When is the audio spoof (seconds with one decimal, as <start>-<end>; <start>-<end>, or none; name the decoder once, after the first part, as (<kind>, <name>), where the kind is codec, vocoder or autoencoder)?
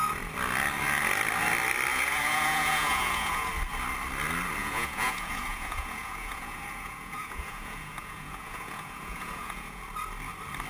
1.9-3.5 (vocoder, Vocos); 4.6-9.8